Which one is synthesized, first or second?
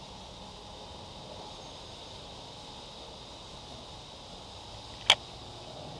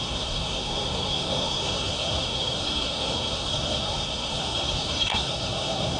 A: second